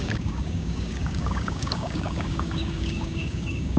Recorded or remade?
remade